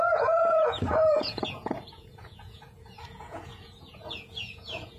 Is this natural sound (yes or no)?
no